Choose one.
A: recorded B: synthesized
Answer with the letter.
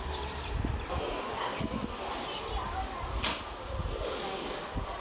A